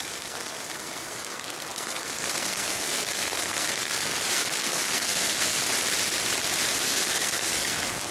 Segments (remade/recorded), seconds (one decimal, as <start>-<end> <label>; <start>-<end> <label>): 0.0-5.7 remade; 5.7-6.7 recorded; 6.7-8.1 remade

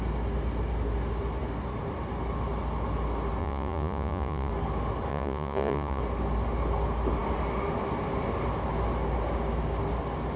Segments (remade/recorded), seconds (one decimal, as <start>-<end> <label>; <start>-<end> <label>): 0.0-3.4 recorded; 3.4-4.5 remade; 4.5-5.1 recorded; 5.1-6.0 remade; 6.0-10.4 recorded

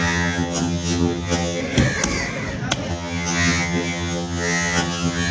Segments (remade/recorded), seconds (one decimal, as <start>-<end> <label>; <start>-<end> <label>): 0.0-1.6 remade; 1.6-2.9 recorded; 2.9-5.3 remade

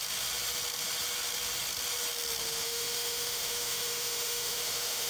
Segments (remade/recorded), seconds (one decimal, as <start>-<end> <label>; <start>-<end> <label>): 0.0-2.4 recorded; 2.4-5.1 remade

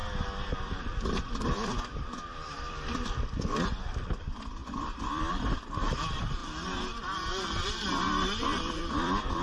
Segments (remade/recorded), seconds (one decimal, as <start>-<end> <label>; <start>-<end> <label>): 0.0-0.6 recorded; 0.6-6.4 remade; 6.4-8.8 recorded; 8.8-9.4 remade

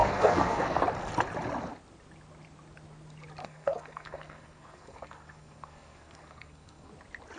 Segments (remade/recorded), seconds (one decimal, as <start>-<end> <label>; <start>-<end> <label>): 0.0-0.8 remade; 0.8-3.4 recorded; 3.4-6.9 remade; 6.9-7.4 recorded

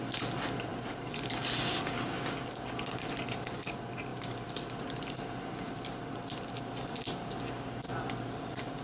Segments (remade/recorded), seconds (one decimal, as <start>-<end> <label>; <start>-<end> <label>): 0.0-8.8 recorded